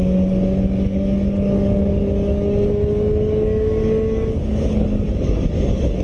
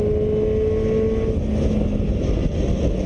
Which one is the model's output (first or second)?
first